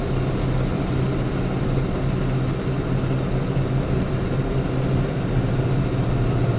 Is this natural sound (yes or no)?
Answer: yes